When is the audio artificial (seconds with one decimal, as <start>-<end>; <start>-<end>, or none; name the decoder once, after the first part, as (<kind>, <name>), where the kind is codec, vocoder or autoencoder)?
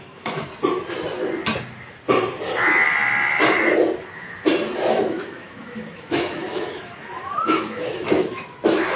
0.0-0.5 (autoencoder, DAC-VAE); 4.9-9.0